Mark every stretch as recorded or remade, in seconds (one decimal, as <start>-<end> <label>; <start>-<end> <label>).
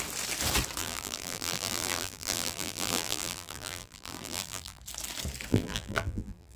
0.0-0.8 recorded; 0.8-4.8 remade; 4.8-5.5 recorded; 5.5-6.6 remade